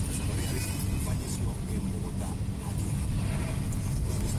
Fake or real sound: real